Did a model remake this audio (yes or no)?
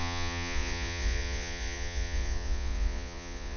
yes